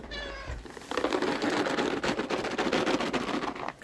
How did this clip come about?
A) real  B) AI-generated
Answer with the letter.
B